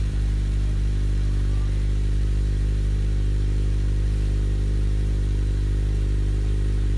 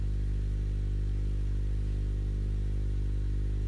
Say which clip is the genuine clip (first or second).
second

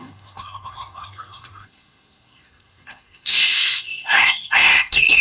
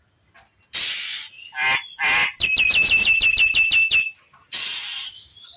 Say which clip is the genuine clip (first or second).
second